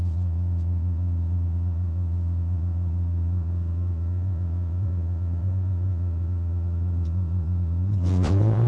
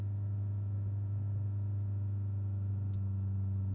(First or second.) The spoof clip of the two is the first